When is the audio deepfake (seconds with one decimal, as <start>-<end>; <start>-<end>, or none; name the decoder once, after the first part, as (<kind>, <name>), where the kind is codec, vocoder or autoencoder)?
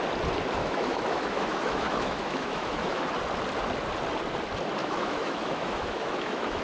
0.6-3.1 (autoencoder, DAC-VAE); 4.8-6.6